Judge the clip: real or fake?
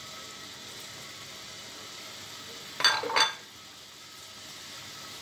real